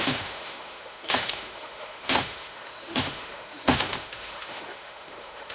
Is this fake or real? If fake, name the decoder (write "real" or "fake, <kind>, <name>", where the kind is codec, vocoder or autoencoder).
fake, autoencoder, DAC-VAE